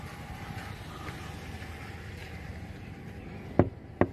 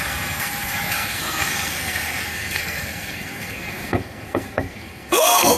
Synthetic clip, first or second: second